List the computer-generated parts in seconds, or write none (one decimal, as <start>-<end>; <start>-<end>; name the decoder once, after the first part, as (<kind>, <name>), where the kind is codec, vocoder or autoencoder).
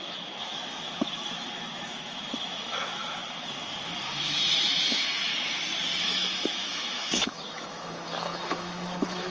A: 0.0-5.3 (autoencoder, DAC-VAE); 6.0-9.3